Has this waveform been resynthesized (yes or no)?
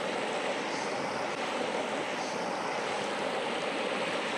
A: no